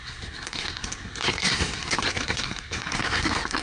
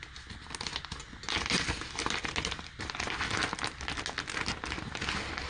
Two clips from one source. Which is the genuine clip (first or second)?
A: second